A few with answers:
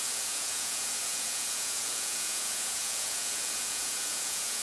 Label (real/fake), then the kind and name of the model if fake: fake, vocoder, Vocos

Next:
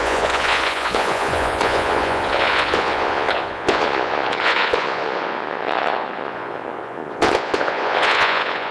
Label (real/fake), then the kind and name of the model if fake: fake, vocoder, Vocos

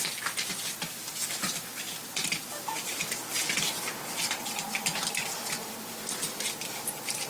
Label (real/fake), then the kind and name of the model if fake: real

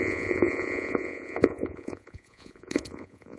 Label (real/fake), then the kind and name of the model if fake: fake, vocoder, Vocos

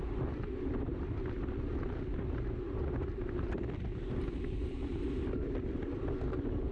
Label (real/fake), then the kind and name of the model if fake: real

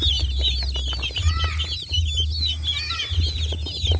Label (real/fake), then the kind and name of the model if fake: real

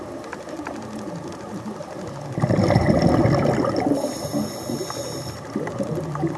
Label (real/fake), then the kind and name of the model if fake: real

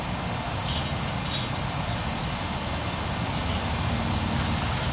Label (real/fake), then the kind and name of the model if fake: real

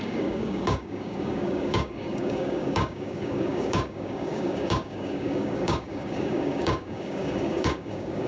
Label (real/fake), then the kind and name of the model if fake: fake, codec, DAC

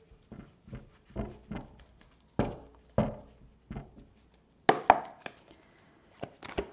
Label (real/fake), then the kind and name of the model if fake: real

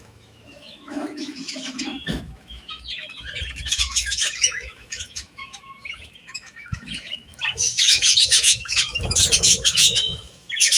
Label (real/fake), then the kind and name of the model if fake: fake, autoencoder, DAC-VAE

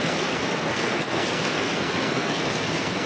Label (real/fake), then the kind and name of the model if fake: fake, codec, SNAC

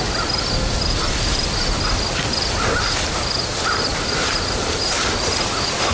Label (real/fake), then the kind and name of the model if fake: real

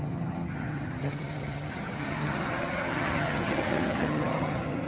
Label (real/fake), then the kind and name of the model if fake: fake, vocoder, HiFi-GAN